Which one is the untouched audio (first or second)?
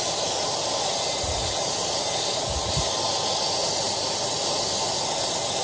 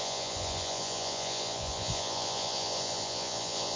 first